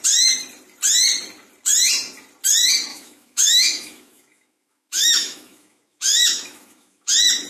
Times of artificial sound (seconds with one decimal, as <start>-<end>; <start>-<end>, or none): 2.9-7.1

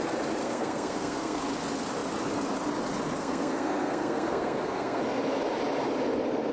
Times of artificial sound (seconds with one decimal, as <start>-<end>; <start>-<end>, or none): 0.4-1.4; 3.2-5.0

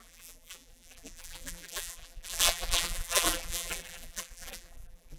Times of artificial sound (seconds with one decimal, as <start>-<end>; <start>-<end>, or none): 0.0-5.2

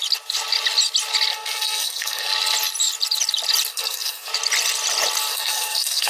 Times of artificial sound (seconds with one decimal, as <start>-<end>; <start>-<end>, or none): 1.3-2.3; 3.7-4.3; 5.3-6.1

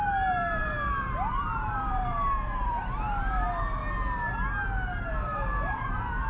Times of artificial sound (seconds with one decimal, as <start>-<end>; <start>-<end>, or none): 0.0-3.8; 5.1-6.3

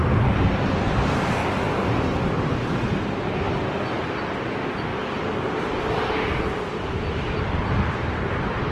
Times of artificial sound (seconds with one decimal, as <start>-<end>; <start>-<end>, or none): 1.4-4.2; 4.9-7.4